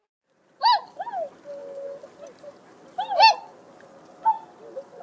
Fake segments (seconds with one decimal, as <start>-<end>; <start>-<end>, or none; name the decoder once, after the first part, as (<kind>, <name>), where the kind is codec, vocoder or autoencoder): none